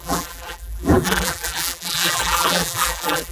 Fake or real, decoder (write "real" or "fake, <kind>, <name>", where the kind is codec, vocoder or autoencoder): fake, vocoder, BigVGAN v2